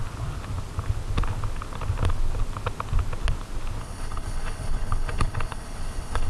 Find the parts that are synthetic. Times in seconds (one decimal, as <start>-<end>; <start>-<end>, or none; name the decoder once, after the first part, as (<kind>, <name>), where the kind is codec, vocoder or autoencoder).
3.8-6.3 (codec, HILCodec)